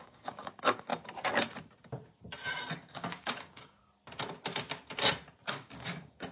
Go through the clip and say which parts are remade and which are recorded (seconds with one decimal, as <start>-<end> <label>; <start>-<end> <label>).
0.0-0.9 remade; 0.9-2.9 recorded; 2.9-3.8 remade; 3.8-5.5 recorded; 5.5-6.3 remade